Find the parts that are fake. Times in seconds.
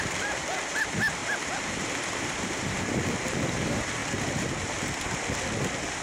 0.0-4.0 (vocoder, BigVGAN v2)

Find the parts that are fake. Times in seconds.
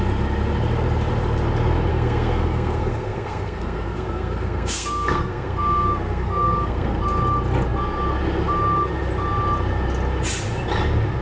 1.9-7.0 (codec, SNAC)